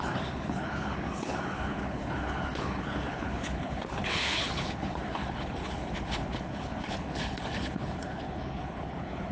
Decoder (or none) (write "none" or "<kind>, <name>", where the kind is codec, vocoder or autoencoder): codec, HILCodec